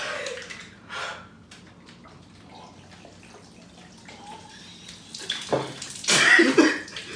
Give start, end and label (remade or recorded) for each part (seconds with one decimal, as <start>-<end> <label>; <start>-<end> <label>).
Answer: 0.0-7.2 recorded